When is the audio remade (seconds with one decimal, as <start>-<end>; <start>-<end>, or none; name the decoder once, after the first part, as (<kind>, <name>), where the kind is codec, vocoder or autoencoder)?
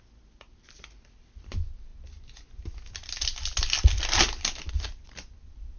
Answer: 0.0-1.9 (vocoder, BigVGAN v2); 4.7-5.8